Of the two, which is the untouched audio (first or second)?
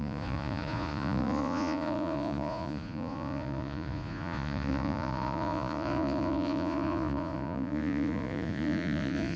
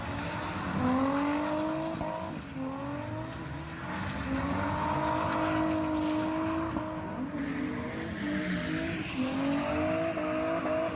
second